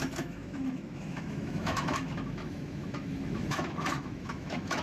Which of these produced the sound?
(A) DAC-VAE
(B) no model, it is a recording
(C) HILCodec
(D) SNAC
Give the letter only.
A